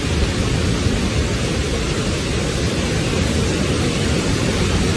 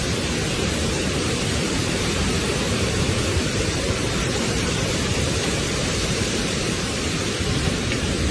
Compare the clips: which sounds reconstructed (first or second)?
second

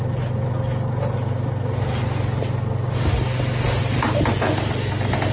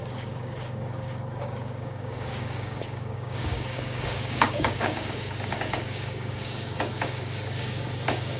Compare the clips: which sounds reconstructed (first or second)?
second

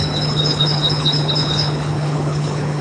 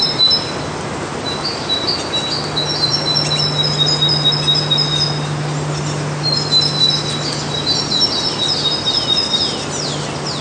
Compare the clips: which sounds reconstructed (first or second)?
first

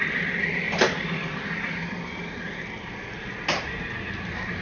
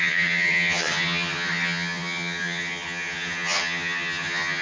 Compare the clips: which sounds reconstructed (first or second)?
second